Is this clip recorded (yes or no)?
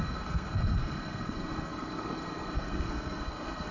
no